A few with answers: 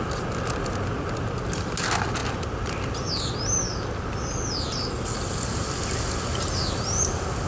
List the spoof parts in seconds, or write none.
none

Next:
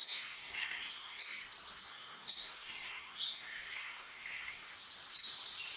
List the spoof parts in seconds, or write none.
0.0-1.4 (codec, SNAC); 1.9-4.7

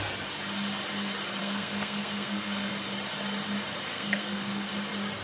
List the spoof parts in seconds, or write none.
1.4-2.7 (codec, SNAC); 3.9-4.7